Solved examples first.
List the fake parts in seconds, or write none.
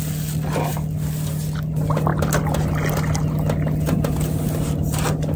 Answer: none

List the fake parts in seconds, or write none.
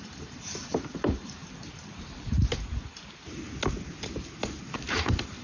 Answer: 0.0-1.4 (vocoder, BigVGAN v2); 4.6-5.4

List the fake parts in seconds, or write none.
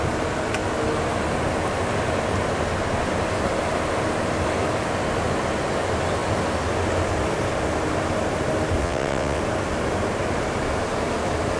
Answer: 8.8-9.4 (vocoder, WaveNeXt)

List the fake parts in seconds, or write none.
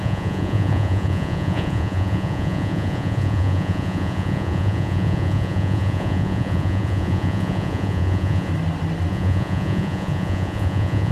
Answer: 0.0-8.5 (vocoder, Vocos); 9.1-11.1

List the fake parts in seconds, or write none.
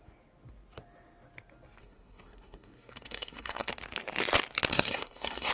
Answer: 1.8-3.7 (codec, SNAC); 4.7-5.5